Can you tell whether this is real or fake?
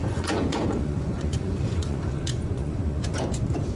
fake